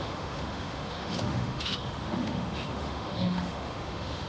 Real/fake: fake